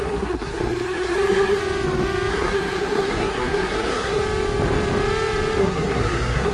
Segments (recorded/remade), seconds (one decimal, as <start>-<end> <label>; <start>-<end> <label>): 0.0-1.6 remade; 1.6-2.3 recorded; 2.3-4.2 remade; 4.2-5.6 recorded; 5.6-6.5 remade